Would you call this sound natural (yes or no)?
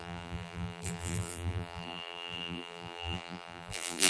no